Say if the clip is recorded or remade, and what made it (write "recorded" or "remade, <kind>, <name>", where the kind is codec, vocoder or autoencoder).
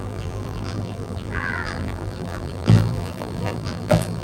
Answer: remade, vocoder, BigVGAN v2